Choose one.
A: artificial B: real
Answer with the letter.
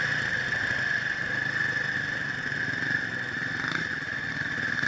B